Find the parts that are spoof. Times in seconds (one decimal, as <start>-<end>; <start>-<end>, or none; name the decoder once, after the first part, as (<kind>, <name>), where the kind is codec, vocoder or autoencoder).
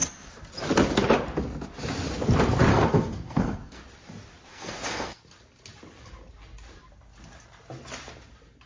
2.7-3.8 (codec, SNAC); 4.5-5.2